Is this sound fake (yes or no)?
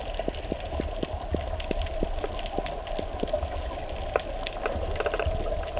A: no